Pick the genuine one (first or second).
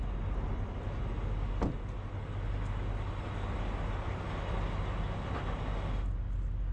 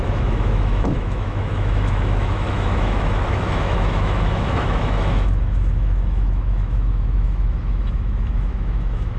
first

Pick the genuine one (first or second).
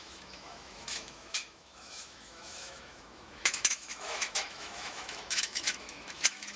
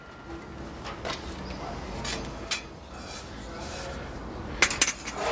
second